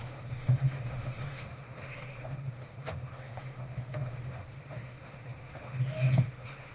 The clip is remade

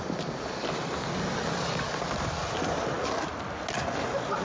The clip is recorded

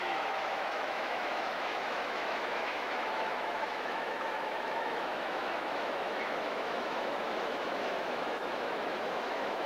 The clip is remade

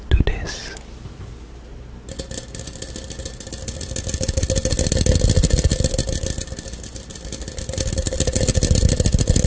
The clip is recorded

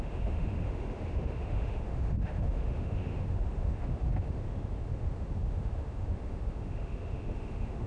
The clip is remade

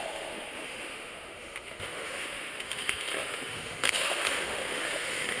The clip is remade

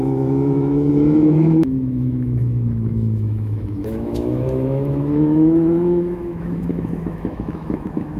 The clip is remade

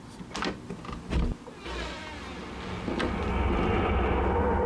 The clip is recorded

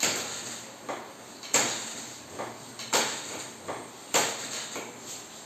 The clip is recorded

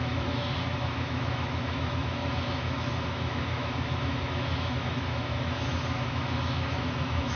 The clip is remade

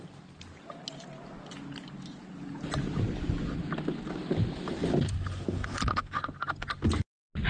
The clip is recorded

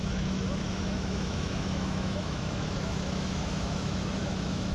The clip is remade